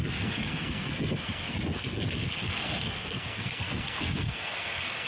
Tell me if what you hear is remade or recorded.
remade